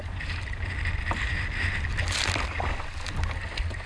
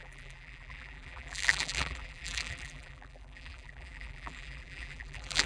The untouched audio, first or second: first